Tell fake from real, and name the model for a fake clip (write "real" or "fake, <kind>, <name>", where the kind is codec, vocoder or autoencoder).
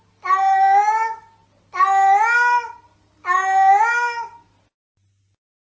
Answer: real